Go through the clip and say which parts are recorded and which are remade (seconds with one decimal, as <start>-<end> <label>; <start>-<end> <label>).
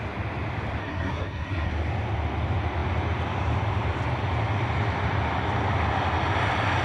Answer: 0.0-0.8 recorded; 0.8-1.7 remade; 1.7-6.8 recorded